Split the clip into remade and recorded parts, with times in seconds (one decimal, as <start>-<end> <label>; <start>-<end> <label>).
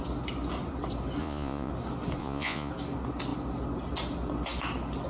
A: 0.0-1.2 recorded; 1.2-1.7 remade; 1.7-2.2 recorded; 2.2-2.7 remade; 2.7-5.1 recorded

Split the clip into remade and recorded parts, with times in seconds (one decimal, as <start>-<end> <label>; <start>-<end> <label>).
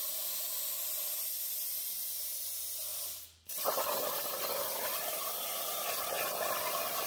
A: 0.0-7.1 recorded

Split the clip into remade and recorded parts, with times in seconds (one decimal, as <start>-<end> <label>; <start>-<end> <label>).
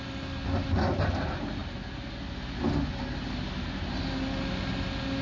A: 0.0-5.2 recorded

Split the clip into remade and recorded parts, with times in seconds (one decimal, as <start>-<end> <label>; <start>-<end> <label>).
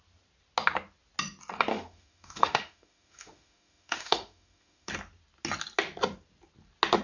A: 0.0-1.7 recorded; 1.7-4.9 remade; 4.9-7.0 recorded